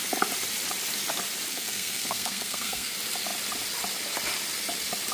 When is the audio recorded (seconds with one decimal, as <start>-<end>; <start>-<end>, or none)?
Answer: 0.0-1.5; 2.9-5.1